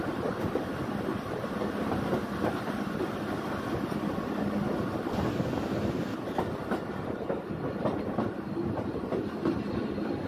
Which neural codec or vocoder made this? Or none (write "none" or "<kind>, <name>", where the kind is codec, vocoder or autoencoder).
none